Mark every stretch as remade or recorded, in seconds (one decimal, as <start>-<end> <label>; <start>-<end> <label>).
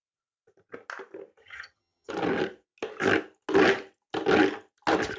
0.0-1.4 recorded; 1.4-2.1 remade; 2.1-5.2 recorded